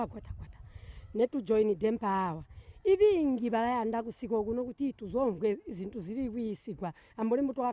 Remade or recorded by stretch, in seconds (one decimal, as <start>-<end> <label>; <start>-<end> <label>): 0.0-6.6 recorded; 6.6-7.1 remade; 7.1-7.7 recorded